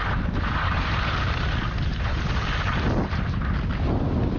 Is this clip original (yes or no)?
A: yes